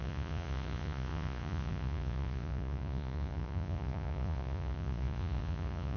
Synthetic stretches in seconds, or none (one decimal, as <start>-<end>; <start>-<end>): 0.0-6.0